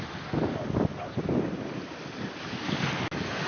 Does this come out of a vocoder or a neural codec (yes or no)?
no